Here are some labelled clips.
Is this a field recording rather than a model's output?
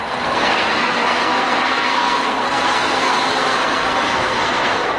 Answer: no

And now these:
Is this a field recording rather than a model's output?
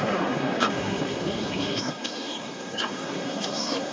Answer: no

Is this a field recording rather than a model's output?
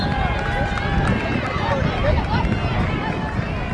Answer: yes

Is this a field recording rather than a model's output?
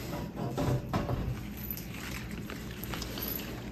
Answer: yes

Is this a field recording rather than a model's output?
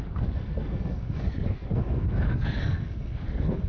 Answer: no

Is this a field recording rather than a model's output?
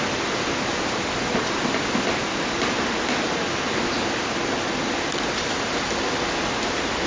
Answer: yes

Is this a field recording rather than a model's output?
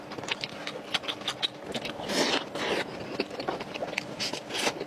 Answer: yes